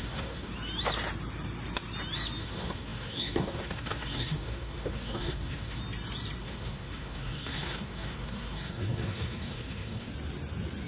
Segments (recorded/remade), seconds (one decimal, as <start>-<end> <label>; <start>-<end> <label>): 0.0-0.5 remade; 0.5-2.4 recorded; 2.4-5.8 remade; 5.8-6.4 recorded; 6.4-10.1 remade; 10.1-10.9 recorded